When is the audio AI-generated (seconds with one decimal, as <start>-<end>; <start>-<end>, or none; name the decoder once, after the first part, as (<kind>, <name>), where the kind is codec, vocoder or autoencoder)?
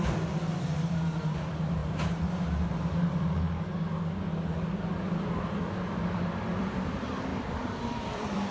0.0-1.8 (vocoder, BigVGAN v2); 5.9-8.5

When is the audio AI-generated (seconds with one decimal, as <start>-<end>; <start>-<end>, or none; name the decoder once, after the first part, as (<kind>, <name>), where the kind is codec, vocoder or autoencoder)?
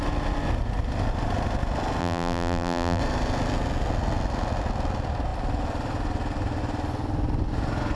2.0-3.0 (vocoder, BigVGAN v2)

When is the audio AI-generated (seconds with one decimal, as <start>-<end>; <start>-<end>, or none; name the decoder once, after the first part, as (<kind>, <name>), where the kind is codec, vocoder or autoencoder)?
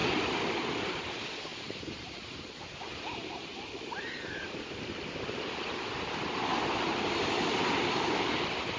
1.5-4.3 (vocoder, BigVGAN v2); 6.5-8.3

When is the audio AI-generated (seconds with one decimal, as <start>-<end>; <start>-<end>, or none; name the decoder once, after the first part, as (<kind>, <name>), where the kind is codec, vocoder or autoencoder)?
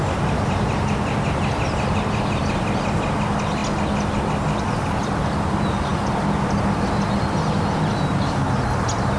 none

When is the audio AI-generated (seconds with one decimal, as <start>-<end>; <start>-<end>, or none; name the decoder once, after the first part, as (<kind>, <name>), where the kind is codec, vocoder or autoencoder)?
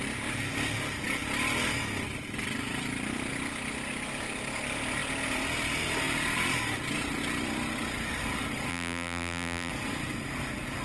8.7-9.7 (vocoder, BigVGAN v2)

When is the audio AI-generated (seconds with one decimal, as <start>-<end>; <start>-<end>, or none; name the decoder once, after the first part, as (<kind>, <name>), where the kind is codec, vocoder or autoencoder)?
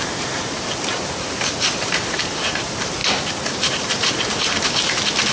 0.0-3.0 (vocoder, BigVGAN v2); 3.6-5.3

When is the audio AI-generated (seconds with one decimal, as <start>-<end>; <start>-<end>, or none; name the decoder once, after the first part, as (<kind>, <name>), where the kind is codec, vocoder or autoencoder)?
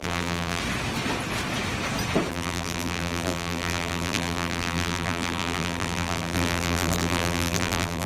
0.0-0.6 (vocoder, BigVGAN v2); 2.3-8.1